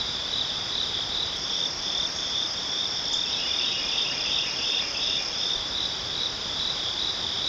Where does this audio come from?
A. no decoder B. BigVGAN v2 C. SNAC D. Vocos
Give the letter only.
B